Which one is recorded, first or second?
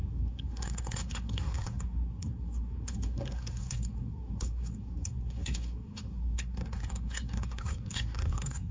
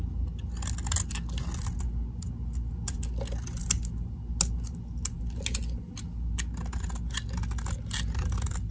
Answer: second